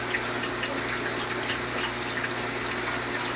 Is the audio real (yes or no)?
yes